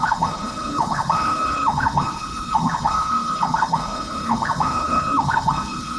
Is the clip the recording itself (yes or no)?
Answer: no